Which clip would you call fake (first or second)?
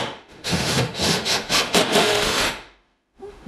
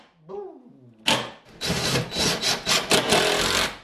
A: first